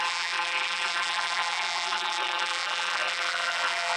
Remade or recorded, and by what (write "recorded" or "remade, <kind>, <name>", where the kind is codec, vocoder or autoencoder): remade, vocoder, BigVGAN v2